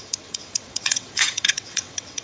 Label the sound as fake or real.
fake